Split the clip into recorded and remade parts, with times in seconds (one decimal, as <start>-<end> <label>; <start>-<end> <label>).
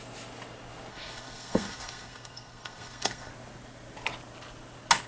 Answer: 0.0-0.9 recorded; 0.9-3.3 remade; 3.3-5.1 recorded